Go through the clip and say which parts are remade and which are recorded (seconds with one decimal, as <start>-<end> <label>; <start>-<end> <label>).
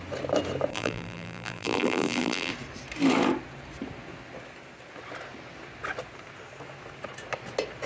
0.0-0.7 recorded; 0.7-2.5 remade; 2.5-7.9 recorded